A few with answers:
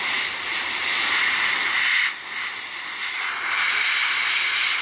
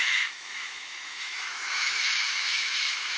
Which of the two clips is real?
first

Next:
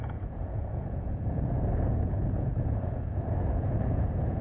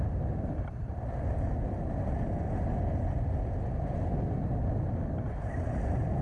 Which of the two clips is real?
second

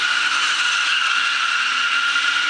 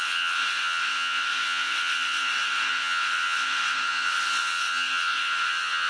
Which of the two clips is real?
first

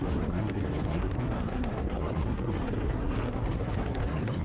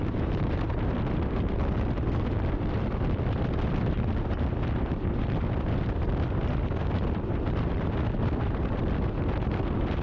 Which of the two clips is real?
second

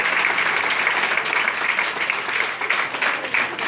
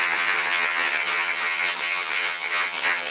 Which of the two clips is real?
first